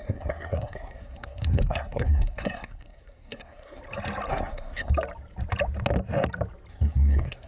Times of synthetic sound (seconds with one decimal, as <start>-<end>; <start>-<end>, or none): 0.0-3.8; 4.3-4.9; 6.7-7.5